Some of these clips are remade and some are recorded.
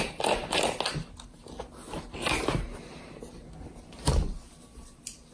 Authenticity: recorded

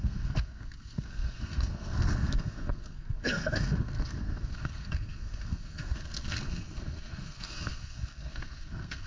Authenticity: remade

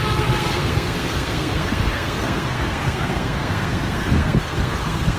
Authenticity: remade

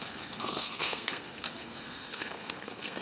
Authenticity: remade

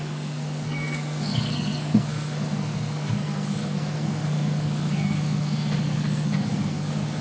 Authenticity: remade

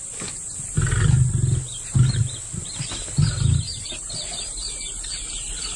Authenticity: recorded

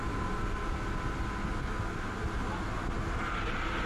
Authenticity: recorded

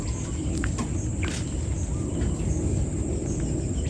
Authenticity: recorded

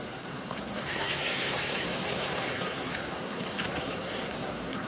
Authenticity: remade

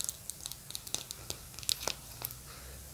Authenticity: recorded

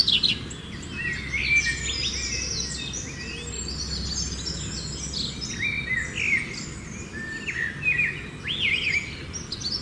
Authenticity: recorded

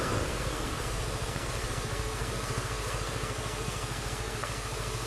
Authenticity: remade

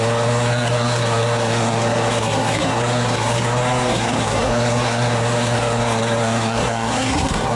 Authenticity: remade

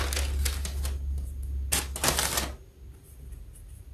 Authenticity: recorded